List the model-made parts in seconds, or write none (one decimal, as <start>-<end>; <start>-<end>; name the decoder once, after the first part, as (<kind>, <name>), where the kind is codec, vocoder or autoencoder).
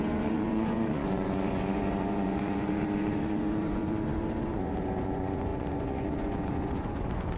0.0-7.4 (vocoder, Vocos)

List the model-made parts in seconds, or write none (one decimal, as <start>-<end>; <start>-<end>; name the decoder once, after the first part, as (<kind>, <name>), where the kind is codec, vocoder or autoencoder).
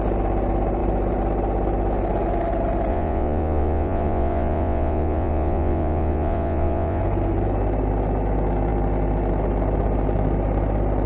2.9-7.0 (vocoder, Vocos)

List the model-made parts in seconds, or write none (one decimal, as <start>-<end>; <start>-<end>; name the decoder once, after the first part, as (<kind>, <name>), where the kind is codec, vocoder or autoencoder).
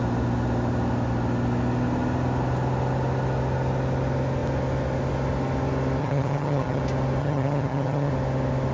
6.0-6.8 (vocoder, HiFi-GAN); 7.2-8.1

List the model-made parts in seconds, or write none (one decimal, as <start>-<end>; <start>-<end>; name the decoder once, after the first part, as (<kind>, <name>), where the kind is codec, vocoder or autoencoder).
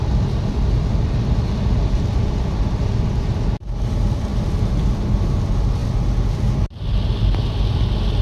none